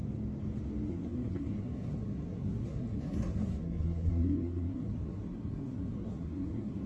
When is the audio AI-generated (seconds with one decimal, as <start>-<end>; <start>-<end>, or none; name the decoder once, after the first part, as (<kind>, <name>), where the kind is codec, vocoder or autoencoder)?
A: 0.9-6.9 (codec, SNAC)